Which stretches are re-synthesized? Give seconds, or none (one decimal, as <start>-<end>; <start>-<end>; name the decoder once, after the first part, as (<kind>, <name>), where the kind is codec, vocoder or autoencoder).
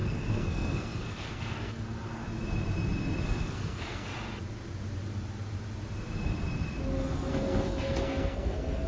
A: 0.0-2.2 (codec, SNAC); 3.4-4.1; 7.3-8.9